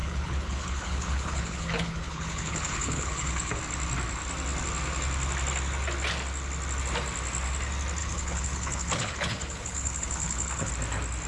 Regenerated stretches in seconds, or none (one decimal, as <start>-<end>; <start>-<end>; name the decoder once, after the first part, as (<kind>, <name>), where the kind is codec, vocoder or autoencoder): 0.0-3.6 (codec, HILCodec); 8.0-10.7